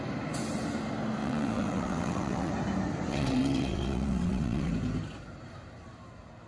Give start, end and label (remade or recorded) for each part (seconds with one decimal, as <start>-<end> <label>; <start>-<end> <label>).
0.0-1.2 recorded; 1.2-2.5 remade; 2.5-3.1 recorded; 3.1-4.7 remade; 4.7-6.5 recorded